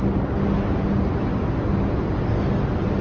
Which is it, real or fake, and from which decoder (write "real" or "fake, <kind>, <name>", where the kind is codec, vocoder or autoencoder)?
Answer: real